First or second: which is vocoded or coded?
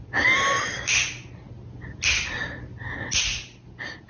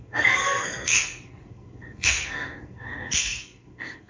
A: second